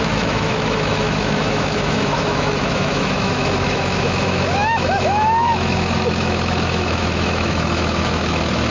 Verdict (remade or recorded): remade